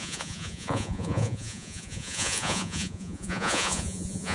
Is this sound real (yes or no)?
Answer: no